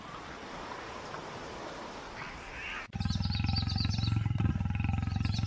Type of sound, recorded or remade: recorded